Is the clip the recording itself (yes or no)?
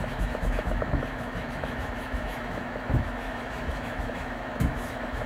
no